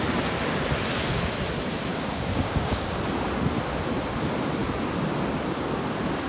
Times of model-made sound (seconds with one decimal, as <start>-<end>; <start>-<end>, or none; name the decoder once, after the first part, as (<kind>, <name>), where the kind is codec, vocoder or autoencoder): 1.9-3.0 (codec, DAC)